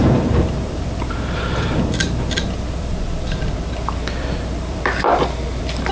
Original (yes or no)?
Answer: no